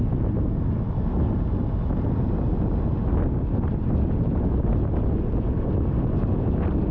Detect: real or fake real